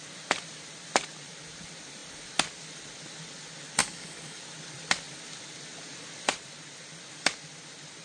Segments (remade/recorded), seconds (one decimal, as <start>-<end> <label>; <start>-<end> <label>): 0.0-3.8 recorded; 3.8-4.4 remade; 4.4-8.0 recorded